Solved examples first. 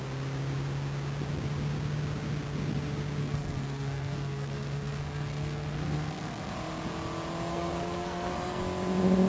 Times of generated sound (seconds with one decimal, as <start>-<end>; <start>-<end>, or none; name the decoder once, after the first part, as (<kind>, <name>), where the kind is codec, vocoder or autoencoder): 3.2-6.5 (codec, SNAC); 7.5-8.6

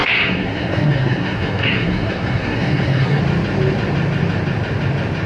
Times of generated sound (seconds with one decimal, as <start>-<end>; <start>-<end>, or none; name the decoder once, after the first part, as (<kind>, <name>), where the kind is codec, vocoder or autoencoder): 0.0-3.2 (codec, SNAC)

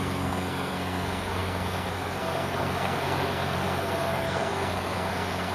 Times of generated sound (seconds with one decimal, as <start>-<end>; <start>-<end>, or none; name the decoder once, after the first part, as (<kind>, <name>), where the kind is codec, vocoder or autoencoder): 0.0-5.5 (codec, SNAC)

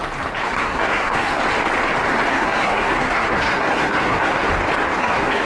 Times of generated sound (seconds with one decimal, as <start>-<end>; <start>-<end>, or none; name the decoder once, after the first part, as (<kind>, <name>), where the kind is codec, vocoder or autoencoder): 0.4-1.4 (codec, SNAC); 2.3-4.5; 5.0-5.5

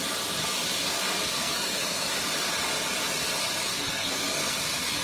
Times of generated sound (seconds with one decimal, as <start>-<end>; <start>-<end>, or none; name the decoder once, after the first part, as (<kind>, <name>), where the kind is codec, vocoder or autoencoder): 0.8-2.2 (codec, SNAC); 3.7-5.0

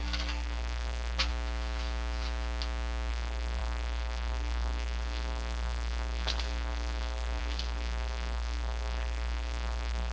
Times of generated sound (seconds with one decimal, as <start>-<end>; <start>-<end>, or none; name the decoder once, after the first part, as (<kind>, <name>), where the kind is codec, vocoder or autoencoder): 0.0-1.3 (codec, SNAC); 3.1-10.1

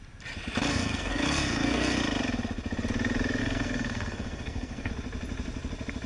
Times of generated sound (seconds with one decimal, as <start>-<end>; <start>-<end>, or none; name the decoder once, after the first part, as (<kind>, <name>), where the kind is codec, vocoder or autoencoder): 0.7-2.0 (codec, SNAC); 3.4-4.9